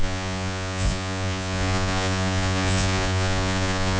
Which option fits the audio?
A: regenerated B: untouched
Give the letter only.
A